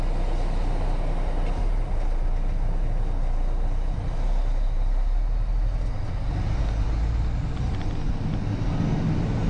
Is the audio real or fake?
real